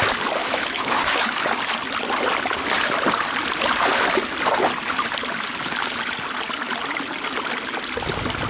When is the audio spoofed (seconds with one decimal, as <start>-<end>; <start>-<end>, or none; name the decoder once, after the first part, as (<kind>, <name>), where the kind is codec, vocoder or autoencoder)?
0.4-1.5 (autoencoder, DAC-VAE)